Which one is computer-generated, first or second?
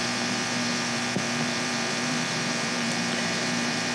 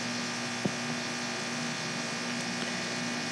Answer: first